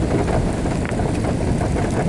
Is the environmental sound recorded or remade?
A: recorded